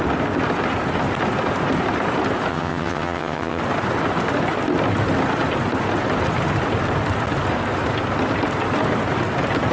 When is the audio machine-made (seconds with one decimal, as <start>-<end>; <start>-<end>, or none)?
2.5-3.6